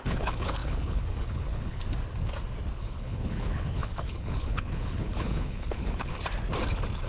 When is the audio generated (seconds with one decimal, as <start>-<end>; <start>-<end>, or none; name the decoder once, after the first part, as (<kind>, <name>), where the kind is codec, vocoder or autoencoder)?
0.0-1.8 (codec, HILCodec); 2.8-6.1